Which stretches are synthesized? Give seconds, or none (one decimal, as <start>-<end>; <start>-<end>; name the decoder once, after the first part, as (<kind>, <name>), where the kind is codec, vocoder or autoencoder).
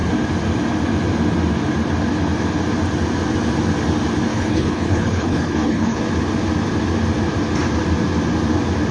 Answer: 4.3-6.0 (codec, HILCodec)